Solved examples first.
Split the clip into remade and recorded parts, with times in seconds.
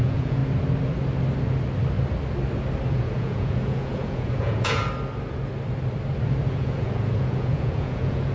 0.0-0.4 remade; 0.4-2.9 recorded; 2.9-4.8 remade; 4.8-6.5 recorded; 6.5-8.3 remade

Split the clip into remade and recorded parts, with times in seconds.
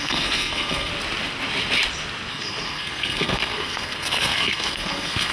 0.0-0.9 remade; 0.9-2.3 recorded; 2.3-5.3 remade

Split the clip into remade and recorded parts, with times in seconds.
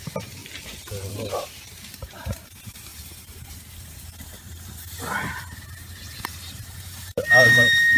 0.0-0.4 remade; 0.4-1.1 recorded; 1.1-8.0 remade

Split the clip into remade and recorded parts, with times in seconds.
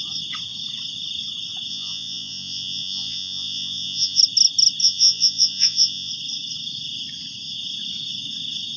0.0-1.7 recorded; 1.7-4.2 remade; 4.2-4.8 recorded; 4.8-6.1 remade; 6.1-8.8 recorded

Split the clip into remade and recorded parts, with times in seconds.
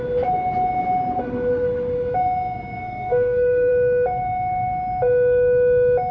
0.0-2.8 recorded; 2.8-3.7 remade; 3.7-6.1 recorded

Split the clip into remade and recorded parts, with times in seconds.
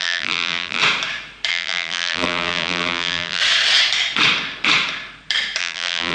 0.0-0.8 remade; 0.8-1.5 recorded; 1.5-3.4 remade; 3.4-5.6 recorded; 5.6-6.1 remade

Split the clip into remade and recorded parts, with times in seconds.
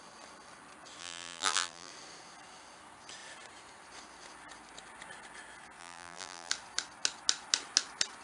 0.0-1.0 recorded; 1.0-1.9 remade; 1.9-5.8 recorded; 5.8-6.5 remade; 6.5-8.2 recorded